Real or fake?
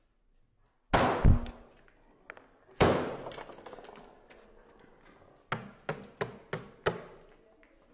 real